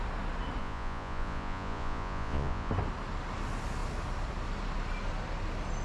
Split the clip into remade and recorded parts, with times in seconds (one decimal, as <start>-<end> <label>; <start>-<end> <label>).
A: 0.0-0.6 recorded; 0.6-2.7 remade; 2.7-5.8 recorded